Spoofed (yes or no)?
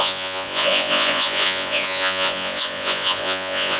yes